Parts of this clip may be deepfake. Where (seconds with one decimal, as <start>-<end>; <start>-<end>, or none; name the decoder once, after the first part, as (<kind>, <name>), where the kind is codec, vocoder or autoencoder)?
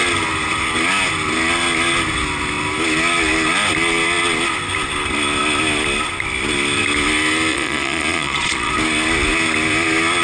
7.5-8.7 (vocoder, Vocos)